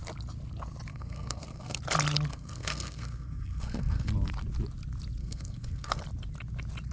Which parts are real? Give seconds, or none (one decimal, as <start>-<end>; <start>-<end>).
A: 0.0-0.9; 1.8-2.3; 4.1-5.2; 6.0-6.9